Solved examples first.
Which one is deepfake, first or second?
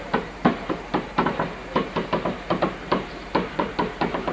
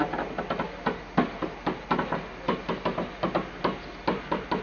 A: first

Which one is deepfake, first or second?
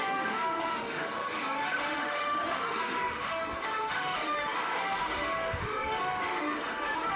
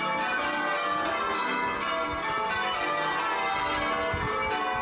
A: first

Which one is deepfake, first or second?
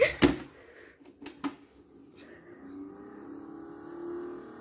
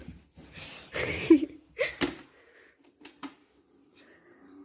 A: second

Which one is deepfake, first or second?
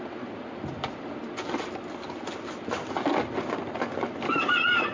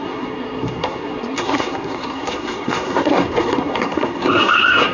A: second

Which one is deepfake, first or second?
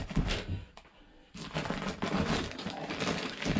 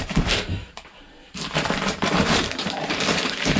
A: second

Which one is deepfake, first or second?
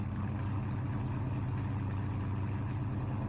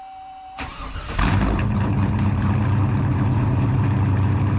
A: second